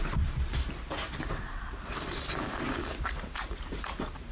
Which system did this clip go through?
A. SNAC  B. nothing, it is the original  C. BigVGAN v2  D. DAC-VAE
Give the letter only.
C